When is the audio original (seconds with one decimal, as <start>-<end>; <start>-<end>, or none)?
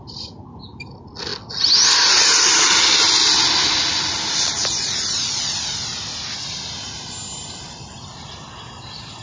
0.0-9.2